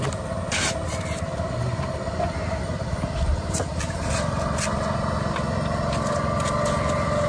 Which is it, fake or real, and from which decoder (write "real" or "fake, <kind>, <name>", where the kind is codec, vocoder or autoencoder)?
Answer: real